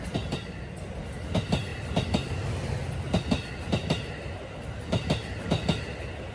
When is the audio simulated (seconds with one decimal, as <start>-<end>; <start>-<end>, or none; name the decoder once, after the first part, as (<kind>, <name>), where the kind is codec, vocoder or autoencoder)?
none

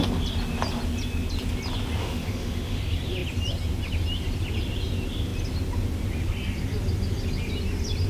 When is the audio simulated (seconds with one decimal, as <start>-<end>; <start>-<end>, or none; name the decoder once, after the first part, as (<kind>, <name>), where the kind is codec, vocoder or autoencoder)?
2.0-2.8 (autoencoder, DAC-VAE)

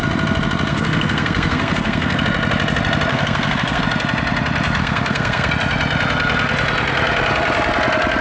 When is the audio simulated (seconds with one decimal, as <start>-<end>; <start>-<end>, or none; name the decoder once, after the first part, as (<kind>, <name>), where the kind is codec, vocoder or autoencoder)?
0.7-2.2 (codec, SNAC); 3.1-3.8; 4.8-5.5